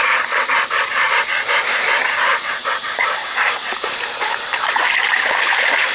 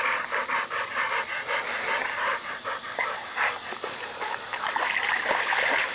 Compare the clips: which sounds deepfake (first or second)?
first